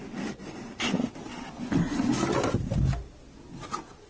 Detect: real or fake real